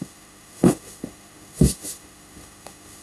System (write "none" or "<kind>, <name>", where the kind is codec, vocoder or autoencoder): autoencoder, DAC-VAE